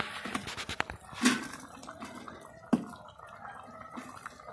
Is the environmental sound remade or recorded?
recorded